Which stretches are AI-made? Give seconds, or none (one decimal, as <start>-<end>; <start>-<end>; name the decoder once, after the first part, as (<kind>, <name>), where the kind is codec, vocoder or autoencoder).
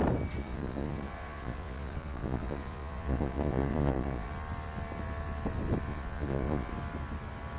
0.4-4.3 (vocoder, Vocos); 5.9-6.7